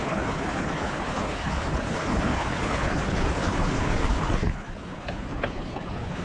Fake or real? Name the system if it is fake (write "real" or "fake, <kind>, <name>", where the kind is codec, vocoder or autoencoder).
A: fake, codec, HILCodec